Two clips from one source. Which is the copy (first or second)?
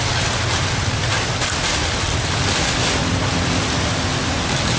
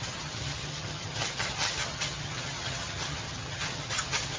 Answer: second